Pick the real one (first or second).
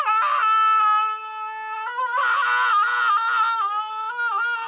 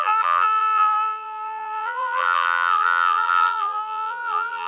first